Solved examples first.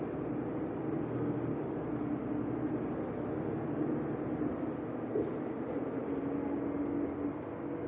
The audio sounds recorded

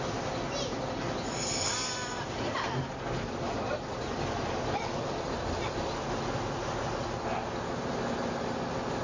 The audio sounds recorded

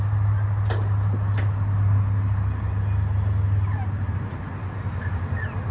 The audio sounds recorded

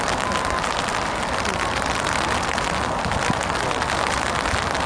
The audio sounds recorded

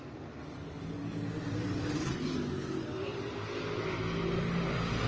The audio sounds recorded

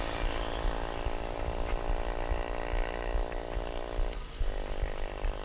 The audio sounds recorded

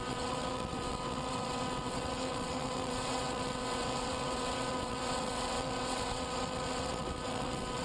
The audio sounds remade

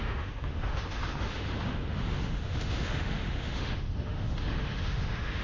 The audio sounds remade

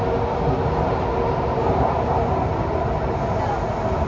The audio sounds recorded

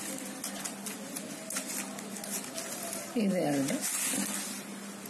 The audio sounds recorded